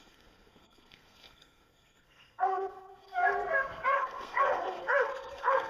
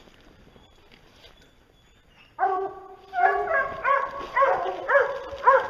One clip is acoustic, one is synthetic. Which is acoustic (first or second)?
second